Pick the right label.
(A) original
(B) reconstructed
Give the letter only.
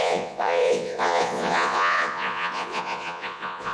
B